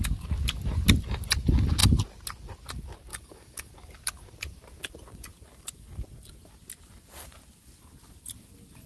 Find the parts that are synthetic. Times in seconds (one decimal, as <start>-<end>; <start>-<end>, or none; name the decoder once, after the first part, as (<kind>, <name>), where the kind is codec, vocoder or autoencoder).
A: 3.1-3.7 (codec, DAC)